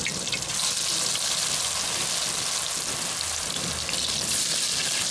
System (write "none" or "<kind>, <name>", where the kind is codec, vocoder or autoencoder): none